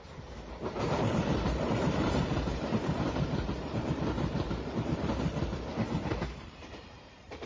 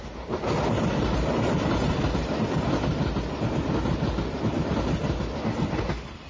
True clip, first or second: second